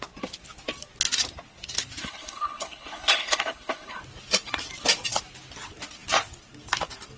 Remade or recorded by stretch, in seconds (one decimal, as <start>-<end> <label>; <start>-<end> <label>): 0.0-2.0 recorded; 2.0-4.0 remade; 4.0-7.2 recorded

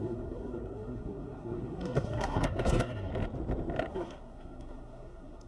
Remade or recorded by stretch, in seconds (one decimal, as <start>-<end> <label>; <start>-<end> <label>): 0.0-3.1 remade; 3.1-3.9 recorded; 3.9-5.5 remade

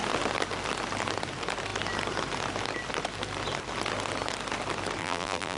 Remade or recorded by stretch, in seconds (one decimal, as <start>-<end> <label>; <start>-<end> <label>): 0.0-5.0 recorded; 5.0-5.6 remade

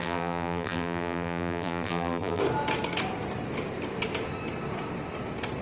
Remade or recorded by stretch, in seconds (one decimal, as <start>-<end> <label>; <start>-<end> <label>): 0.0-2.4 remade; 2.4-5.6 recorded

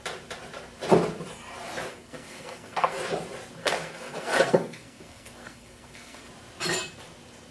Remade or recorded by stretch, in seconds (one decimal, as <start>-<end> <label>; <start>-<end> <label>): 0.0-1.9 recorded; 1.9-3.0 remade; 3.0-3.6 recorded; 3.6-6.3 remade; 6.3-7.5 recorded

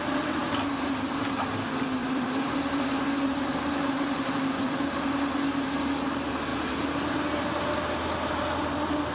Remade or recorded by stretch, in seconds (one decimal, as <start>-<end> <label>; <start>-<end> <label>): 0.0-2.0 recorded; 2.0-5.2 remade; 5.2-6.5 recorded; 6.5-7.2 remade; 7.2-9.1 recorded